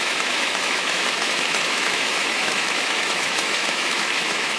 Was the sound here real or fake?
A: fake